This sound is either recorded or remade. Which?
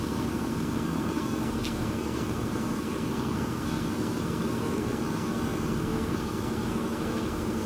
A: remade